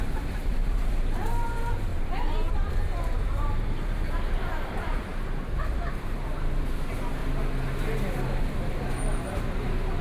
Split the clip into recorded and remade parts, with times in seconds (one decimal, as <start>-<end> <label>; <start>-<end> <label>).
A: 0.0-5.1 remade; 5.1-5.6 recorded; 5.6-7.2 remade; 7.2-8.4 recorded; 8.4-10.0 remade